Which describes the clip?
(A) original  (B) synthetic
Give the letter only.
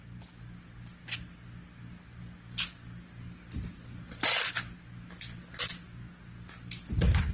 A